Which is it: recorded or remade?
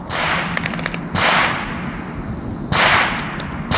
recorded